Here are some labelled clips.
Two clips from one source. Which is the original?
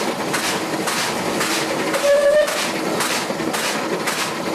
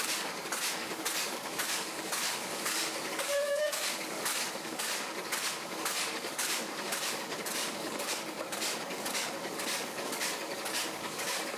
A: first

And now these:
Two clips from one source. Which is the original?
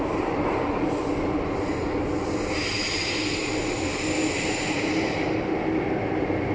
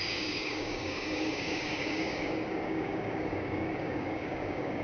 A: first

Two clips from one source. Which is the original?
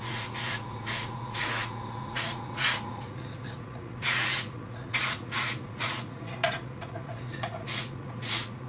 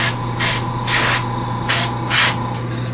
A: second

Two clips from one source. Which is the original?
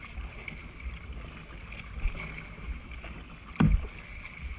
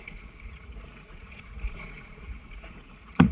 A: first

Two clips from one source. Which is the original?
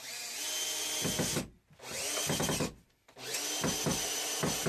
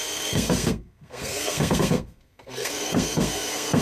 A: first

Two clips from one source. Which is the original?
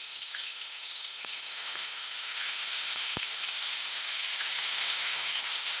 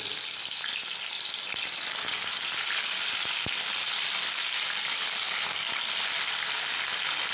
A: second